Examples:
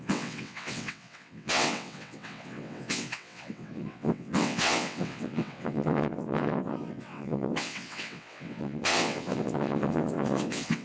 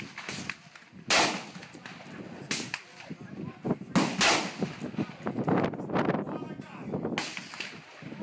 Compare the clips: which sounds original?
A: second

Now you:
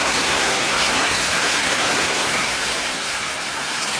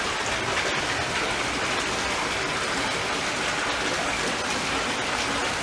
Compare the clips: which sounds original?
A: second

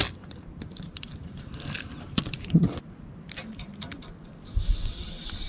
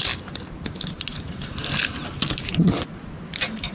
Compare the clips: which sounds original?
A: second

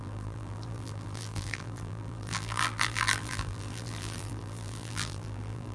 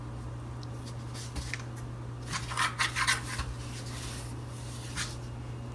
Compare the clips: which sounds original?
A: second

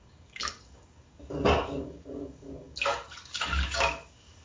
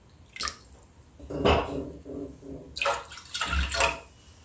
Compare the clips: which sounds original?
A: second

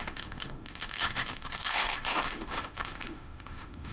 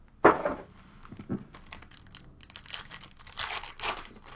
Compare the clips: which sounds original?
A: second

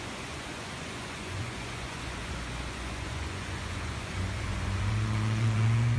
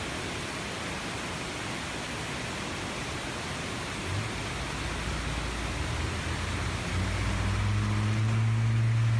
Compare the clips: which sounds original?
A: second